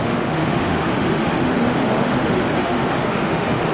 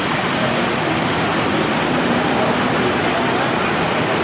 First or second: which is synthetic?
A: first